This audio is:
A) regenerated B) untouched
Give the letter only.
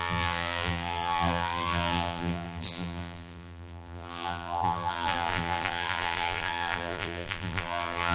A